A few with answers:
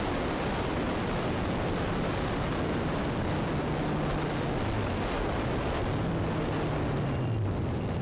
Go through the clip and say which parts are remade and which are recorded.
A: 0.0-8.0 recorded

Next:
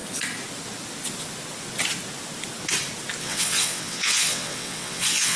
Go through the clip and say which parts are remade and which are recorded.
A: 0.0-3.2 recorded; 3.2-5.4 remade

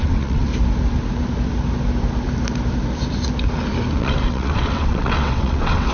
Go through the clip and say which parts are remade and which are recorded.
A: 0.0-0.5 remade; 0.5-4.0 recorded; 4.0-5.9 remade

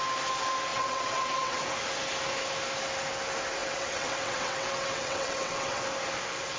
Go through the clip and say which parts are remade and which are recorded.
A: 0.0-0.7 recorded; 0.7-1.6 remade; 1.6-3.6 recorded; 3.6-5.8 remade; 5.8-6.6 recorded

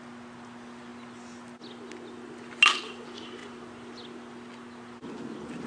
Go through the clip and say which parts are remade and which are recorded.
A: 0.0-5.7 recorded

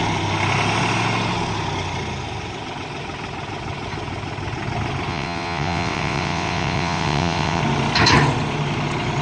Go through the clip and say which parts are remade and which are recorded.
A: 0.0-5.1 recorded; 5.1-7.6 remade; 7.6-9.2 recorded

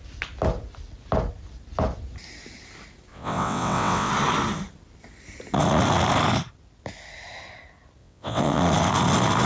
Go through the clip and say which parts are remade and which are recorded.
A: 0.0-3.1 recorded; 3.1-4.1 remade; 4.1-8.0 recorded; 8.0-8.6 remade; 8.6-9.5 recorded